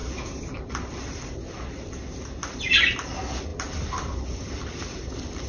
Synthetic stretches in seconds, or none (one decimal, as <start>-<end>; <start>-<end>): none